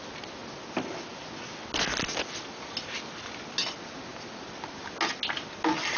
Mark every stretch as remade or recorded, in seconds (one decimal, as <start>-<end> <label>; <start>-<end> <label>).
0.0-6.0 recorded